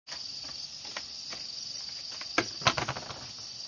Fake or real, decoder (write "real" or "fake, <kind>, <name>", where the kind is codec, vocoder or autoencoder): real